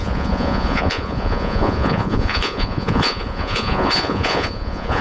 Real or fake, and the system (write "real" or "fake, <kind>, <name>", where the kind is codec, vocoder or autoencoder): fake, vocoder, Vocos